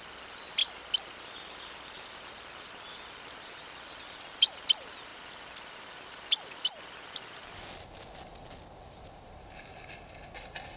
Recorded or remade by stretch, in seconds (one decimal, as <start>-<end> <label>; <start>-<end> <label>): 0.0-10.8 recorded